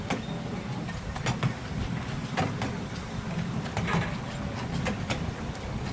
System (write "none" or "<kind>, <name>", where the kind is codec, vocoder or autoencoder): none